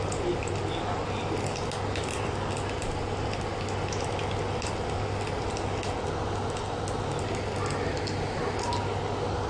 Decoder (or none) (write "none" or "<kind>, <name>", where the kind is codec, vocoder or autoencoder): none